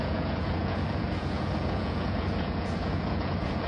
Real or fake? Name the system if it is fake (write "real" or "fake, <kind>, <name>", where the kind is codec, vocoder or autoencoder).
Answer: fake, vocoder, Vocos